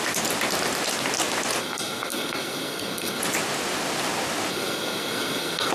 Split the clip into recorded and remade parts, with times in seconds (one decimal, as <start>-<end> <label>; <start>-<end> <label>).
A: 0.0-1.6 recorded; 1.6-3.2 remade; 3.2-4.5 recorded; 4.5-5.7 remade